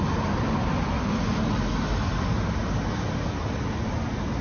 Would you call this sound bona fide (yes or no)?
yes